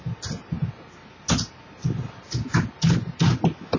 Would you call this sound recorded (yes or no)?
yes